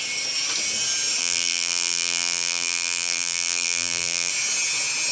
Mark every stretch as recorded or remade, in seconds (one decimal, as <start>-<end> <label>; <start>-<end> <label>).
0.0-1.2 recorded; 1.2-4.3 remade; 4.3-5.1 recorded